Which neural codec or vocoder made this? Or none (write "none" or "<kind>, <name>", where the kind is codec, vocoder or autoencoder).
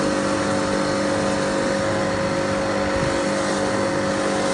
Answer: none